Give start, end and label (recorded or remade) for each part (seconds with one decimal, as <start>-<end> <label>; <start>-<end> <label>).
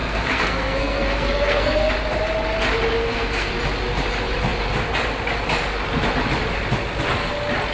0.0-1.9 remade; 1.9-3.0 recorded; 3.0-3.5 remade; 3.5-7.7 recorded